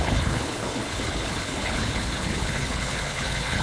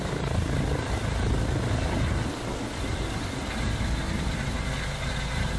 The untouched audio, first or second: second